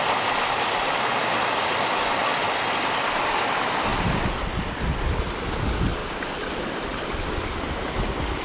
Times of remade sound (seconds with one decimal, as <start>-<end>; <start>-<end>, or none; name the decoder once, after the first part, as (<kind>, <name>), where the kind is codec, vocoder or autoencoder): none